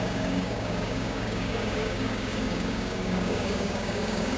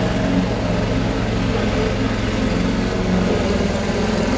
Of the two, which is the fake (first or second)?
first